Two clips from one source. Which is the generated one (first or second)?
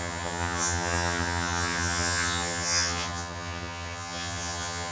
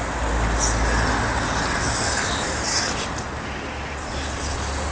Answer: first